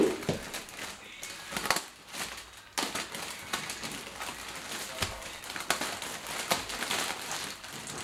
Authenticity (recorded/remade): recorded